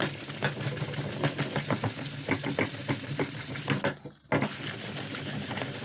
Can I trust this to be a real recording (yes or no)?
yes